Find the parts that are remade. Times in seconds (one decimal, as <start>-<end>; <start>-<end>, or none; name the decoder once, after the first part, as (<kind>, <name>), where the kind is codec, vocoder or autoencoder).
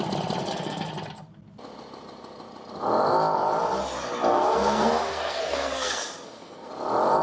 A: 0.4-0.9 (codec, SNAC); 4.3-6.7